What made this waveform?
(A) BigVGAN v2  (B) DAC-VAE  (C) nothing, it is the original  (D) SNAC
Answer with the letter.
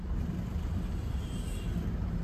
A